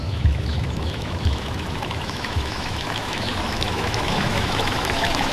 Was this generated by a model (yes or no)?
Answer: yes